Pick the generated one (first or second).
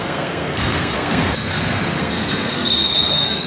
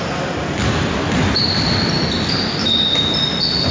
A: first